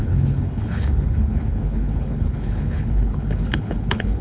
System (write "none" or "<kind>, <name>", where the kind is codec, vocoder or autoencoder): codec, HILCodec